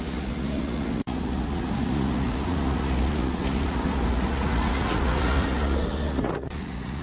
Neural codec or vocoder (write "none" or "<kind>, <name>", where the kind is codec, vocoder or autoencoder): vocoder, Vocos